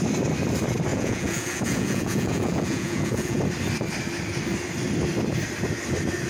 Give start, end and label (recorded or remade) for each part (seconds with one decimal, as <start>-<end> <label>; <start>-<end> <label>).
0.0-0.9 recorded; 0.9-3.4 remade; 3.4-6.3 recorded